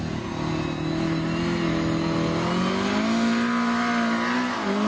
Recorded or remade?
recorded